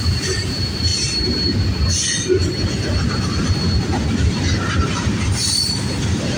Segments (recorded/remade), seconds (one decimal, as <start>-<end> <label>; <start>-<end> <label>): 0.0-0.9 remade; 0.9-4.7 recorded; 4.7-6.4 remade